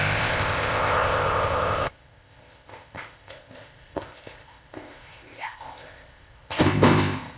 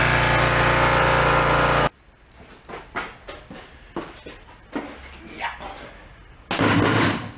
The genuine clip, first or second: second